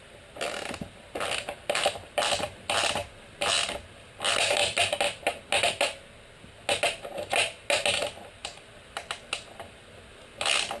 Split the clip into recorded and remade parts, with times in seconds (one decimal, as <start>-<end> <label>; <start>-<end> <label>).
0.0-3.0 remade; 3.0-3.5 recorded; 3.5-4.6 remade; 4.6-7.9 recorded; 7.9-8.4 remade; 8.4-10.8 recorded